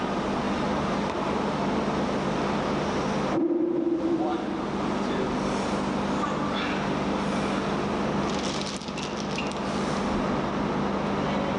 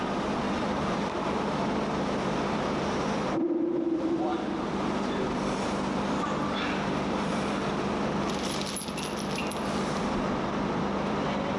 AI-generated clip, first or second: second